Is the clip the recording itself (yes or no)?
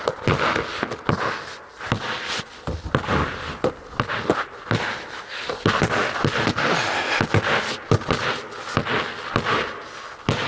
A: yes